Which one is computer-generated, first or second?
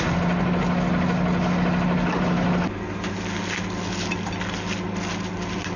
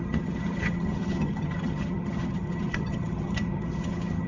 second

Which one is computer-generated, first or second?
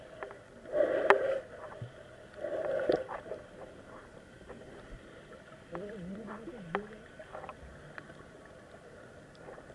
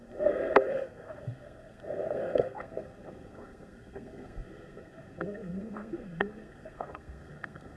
second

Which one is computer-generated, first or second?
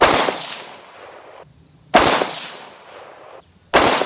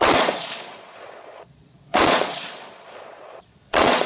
second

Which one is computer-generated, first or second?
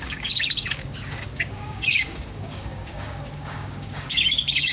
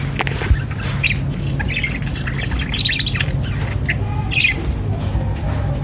first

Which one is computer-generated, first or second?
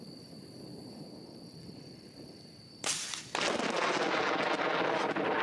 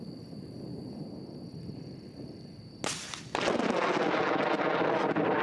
first